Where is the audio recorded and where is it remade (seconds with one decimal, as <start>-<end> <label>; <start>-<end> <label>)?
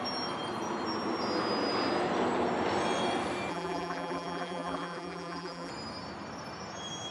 0.0-3.5 recorded; 3.5-5.7 remade; 5.7-7.1 recorded